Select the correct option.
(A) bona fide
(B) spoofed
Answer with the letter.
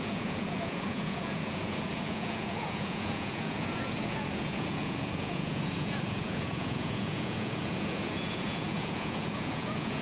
B